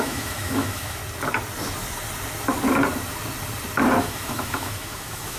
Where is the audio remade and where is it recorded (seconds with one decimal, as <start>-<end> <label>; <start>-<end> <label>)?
0.0-1.0 remade; 1.0-4.0 recorded; 4.0-5.4 remade